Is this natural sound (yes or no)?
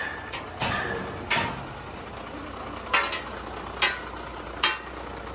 yes